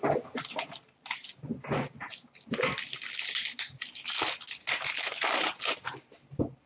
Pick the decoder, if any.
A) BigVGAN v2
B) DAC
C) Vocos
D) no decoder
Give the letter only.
D